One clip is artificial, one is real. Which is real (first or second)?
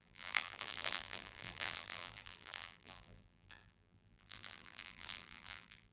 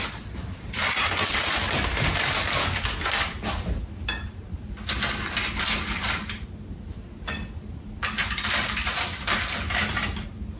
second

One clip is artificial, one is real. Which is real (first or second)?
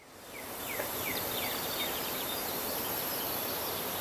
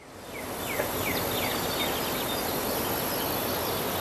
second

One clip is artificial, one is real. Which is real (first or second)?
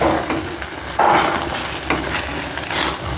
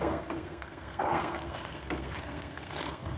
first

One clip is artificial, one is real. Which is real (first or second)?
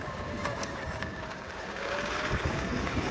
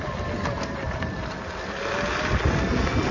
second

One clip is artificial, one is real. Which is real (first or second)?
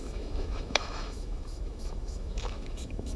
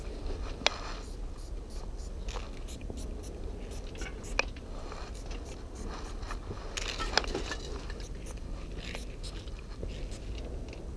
second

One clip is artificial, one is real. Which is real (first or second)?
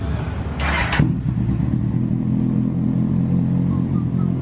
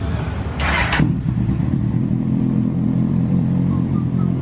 first